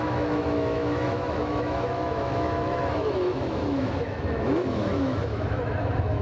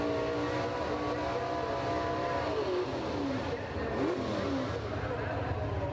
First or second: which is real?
second